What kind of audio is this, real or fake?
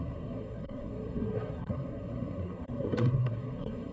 fake